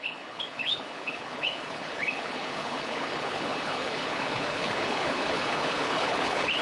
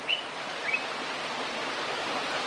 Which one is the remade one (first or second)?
first